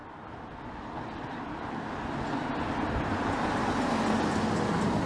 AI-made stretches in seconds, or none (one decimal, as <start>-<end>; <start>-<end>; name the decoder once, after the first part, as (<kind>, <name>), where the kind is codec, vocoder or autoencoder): none